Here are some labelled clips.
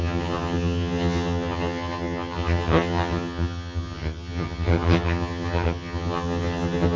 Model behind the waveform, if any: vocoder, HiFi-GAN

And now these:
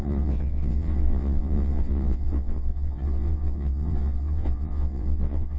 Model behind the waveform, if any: vocoder, WaveNeXt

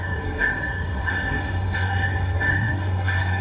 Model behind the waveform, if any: codec, SNAC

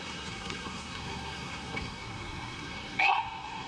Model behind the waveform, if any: codec, SNAC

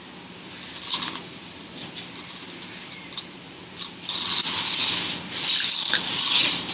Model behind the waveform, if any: none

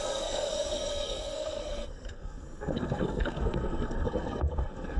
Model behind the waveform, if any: codec, SNAC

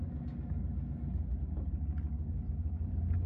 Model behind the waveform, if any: none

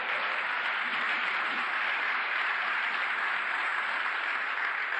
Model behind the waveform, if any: none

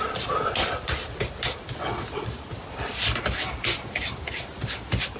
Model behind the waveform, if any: none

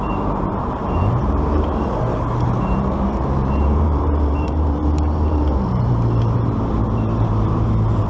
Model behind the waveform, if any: vocoder, BigVGAN v2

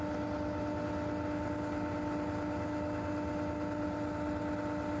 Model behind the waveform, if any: none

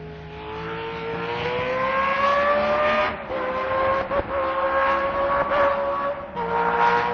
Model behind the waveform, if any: none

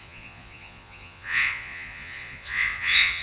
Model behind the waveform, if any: vocoder, Vocos